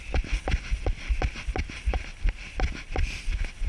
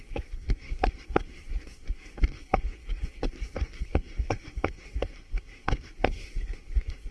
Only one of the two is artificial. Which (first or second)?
second